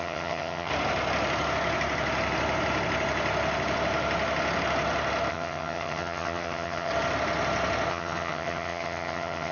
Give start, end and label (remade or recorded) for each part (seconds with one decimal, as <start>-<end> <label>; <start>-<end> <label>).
0.0-0.7 remade; 0.7-5.3 recorded; 5.3-6.9 remade; 6.9-7.9 recorded; 7.9-9.5 remade